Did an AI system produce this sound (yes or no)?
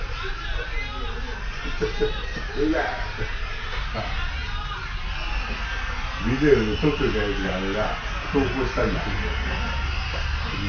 no